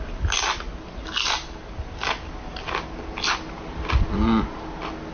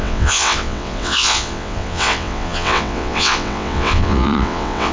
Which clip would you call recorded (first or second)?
first